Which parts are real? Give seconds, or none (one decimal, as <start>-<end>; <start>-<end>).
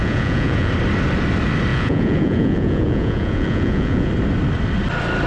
0.7-1.7; 4.1-5.3